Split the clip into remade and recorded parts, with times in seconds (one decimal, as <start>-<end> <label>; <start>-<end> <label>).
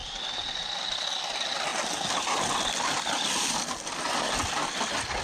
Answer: 0.0-5.2 recorded